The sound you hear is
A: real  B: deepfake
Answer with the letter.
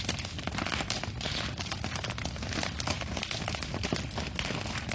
A